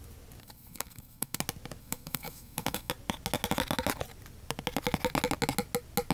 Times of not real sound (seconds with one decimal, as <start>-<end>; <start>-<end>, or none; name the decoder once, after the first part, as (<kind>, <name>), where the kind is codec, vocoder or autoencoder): 0.4-1.4 (codec, SNAC); 1.8-2.9